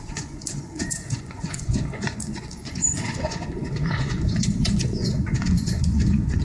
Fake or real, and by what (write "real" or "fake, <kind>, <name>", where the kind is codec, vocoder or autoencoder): fake, vocoder, Vocos